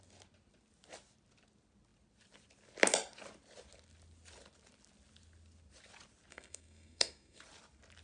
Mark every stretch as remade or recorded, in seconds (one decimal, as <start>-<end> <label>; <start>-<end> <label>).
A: 0.0-6.3 recorded; 6.3-7.4 remade; 7.4-8.0 recorded